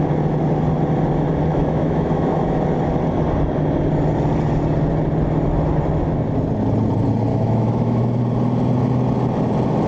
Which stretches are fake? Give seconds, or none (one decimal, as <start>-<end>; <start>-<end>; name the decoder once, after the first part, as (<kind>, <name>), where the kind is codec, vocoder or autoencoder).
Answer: 1.5-2.6 (autoencoder, DAC-VAE); 7.3-8.2